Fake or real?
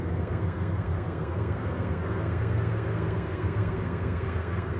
fake